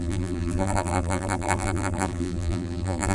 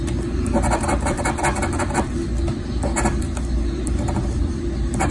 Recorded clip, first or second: second